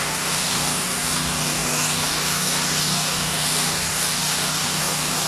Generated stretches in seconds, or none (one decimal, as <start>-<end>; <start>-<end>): 0.0-5.3